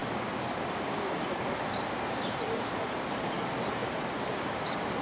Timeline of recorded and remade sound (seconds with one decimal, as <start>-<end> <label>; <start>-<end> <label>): 0.0-1.9 recorded; 1.9-5.0 remade